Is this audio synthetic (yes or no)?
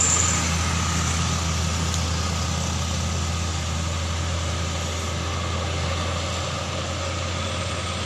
no